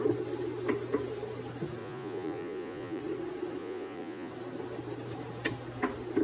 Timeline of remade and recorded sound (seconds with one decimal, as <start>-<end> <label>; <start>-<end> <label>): 0.0-1.8 recorded; 1.8-3.0 remade; 3.0-3.6 recorded; 3.6-4.3 remade; 4.3-6.2 recorded